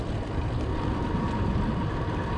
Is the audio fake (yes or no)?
no